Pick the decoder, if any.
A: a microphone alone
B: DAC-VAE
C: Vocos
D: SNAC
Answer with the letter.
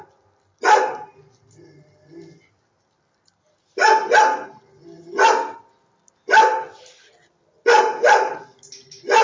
A